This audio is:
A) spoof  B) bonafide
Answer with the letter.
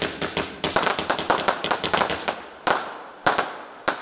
B